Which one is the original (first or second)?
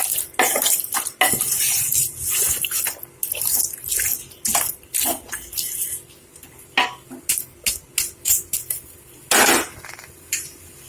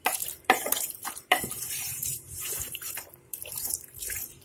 first